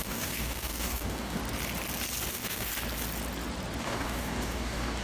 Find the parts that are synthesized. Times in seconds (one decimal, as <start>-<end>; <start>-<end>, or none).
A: 0.0-1.4; 2.3-2.7; 3.8-5.0

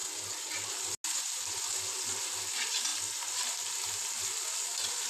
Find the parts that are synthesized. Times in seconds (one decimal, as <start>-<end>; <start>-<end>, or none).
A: none

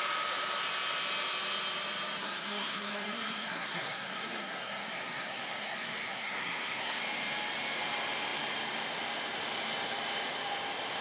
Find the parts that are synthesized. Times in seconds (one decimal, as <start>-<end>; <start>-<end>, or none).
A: 2.2-7.0